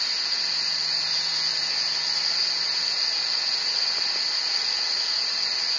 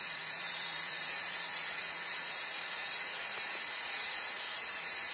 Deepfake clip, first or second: second